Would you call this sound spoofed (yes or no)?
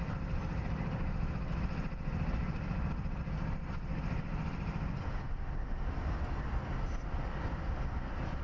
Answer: no